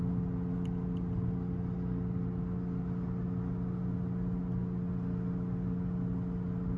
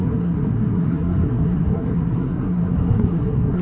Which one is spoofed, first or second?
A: second